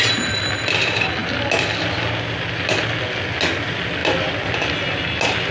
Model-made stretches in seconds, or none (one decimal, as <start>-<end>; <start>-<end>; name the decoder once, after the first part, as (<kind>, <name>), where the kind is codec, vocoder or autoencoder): none